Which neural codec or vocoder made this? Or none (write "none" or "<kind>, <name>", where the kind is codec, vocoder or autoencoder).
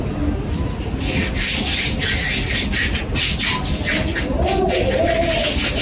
none